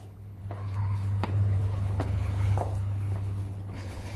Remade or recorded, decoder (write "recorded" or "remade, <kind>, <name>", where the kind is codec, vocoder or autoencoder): remade, codec, HILCodec